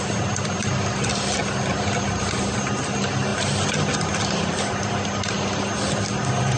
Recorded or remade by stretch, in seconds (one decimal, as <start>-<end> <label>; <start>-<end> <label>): 0.0-6.6 recorded

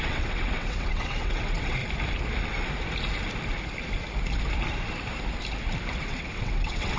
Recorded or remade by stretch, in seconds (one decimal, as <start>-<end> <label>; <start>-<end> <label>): 0.0-1.8 remade; 1.8-6.0 recorded; 6.0-7.0 remade

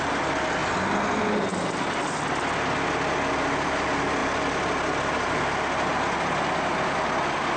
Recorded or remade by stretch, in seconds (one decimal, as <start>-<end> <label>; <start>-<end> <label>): 0.0-7.6 recorded

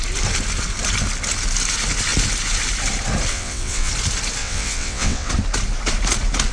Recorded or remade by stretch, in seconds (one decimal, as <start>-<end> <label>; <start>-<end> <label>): 0.0-3.3 recorded; 3.3-3.9 remade; 3.9-4.4 recorded; 4.4-5.3 remade; 5.3-6.5 recorded